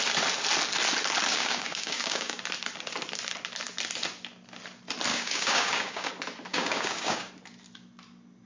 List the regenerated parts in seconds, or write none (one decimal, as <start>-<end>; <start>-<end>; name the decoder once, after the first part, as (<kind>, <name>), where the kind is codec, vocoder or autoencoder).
1.3-2.4 (codec, DAC); 5.1-6.1; 6.5-7.3